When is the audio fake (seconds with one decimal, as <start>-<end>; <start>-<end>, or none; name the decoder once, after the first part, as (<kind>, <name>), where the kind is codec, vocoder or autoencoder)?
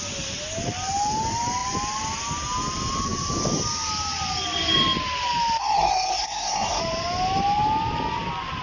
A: 5.6-6.8 (codec, SNAC)